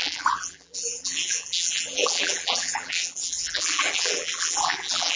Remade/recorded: remade